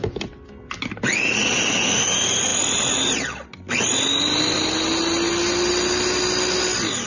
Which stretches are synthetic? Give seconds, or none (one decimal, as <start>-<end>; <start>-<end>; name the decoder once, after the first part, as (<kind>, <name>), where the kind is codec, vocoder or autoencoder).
none